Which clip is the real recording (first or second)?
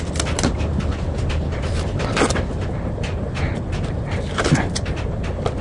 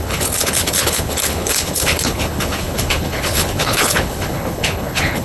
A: first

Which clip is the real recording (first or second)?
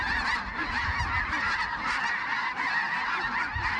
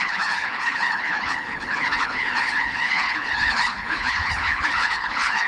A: first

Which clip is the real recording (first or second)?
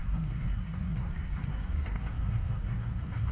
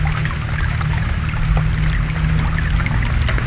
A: second